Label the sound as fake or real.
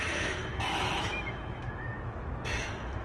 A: fake